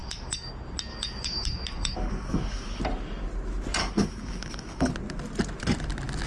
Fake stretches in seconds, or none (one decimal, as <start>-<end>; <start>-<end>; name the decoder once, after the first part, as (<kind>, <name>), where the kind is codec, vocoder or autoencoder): 0.0-0.5 (codec, DAC); 0.9-2.8; 3.8-4.9